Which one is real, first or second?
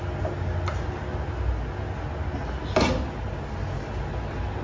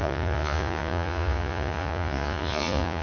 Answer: first